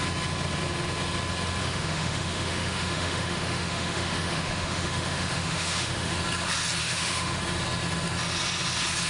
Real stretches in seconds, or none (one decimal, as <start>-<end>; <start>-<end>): 0.0-1.6; 6.2-6.8; 7.4-9.1